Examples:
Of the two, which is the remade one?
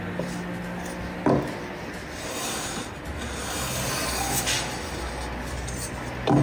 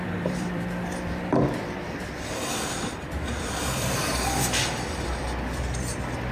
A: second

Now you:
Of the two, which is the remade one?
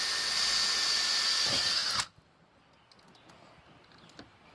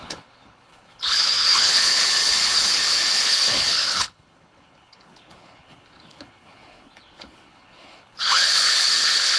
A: second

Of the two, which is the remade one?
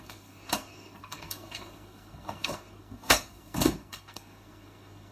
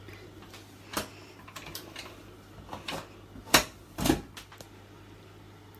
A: first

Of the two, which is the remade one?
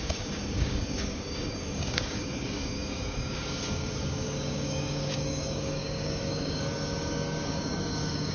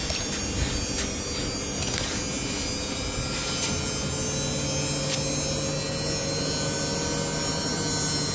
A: first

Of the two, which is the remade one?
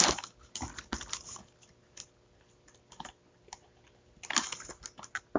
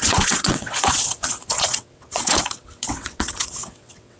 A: second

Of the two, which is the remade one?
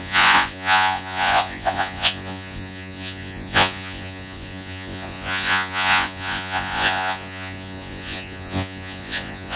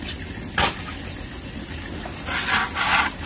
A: first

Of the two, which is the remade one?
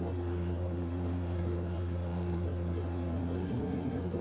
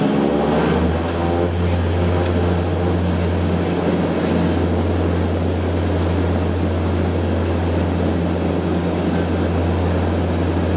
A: first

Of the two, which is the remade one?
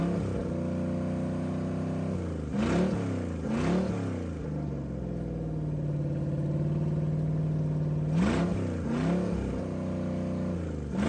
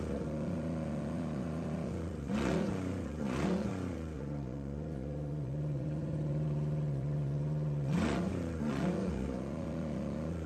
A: second